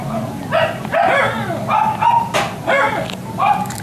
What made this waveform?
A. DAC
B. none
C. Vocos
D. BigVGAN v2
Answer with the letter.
B